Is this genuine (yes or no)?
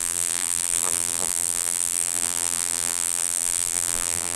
no